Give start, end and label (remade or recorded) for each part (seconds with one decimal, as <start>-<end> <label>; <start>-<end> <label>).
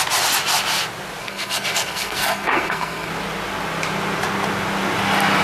0.0-1.2 recorded; 1.2-3.1 remade; 3.1-5.4 recorded